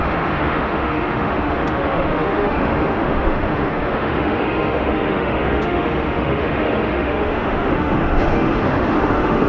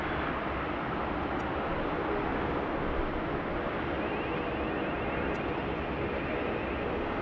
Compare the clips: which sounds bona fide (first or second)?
second